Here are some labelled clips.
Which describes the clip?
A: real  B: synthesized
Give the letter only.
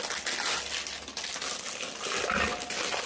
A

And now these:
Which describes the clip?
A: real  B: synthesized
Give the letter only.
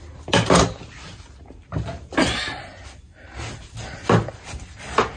A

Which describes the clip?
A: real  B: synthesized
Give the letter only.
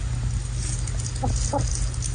A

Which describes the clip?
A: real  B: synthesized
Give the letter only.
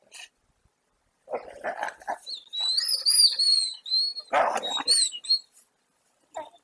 A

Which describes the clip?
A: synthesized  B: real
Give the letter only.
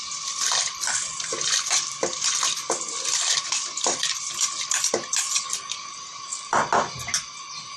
A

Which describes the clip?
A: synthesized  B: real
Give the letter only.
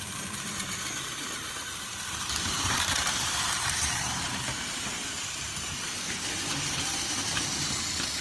A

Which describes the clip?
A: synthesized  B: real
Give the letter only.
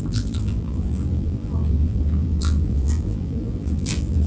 A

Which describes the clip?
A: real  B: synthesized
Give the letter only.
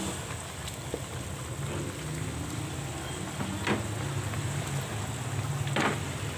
A